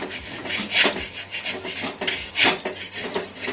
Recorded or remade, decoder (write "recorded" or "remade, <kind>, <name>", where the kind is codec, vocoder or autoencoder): recorded